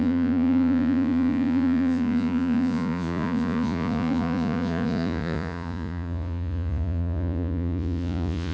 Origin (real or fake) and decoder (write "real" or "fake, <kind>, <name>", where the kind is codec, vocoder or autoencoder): fake, vocoder, Vocos